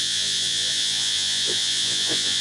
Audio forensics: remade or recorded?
remade